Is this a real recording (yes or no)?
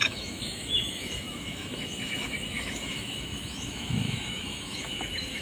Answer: no